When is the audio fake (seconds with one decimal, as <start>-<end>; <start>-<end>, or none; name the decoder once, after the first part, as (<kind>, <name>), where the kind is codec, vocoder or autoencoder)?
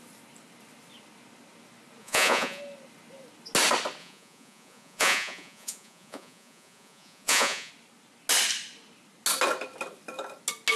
2.0-2.6 (vocoder, Vocos); 4.0-7.7